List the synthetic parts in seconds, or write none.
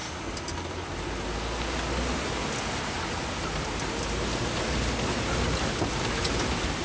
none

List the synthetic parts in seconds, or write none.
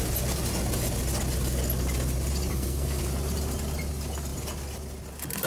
2.5-3.0 (codec, SNAC)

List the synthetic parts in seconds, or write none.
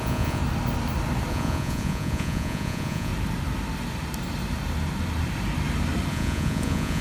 0.0-0.4 (vocoder, Vocos); 1.3-3.1; 6.1-7.0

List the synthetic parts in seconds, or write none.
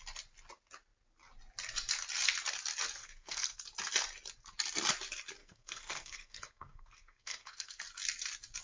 3.0-3.6 (codec, SNAC); 5.4-7.8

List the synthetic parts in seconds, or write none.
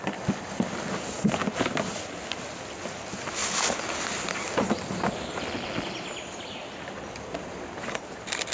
none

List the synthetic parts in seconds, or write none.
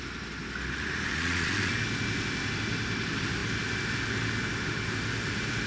1.1-1.7 (vocoder, Vocos)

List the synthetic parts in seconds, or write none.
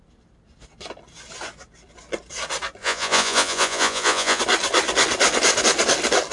2.8-4.4 (vocoder, Vocos)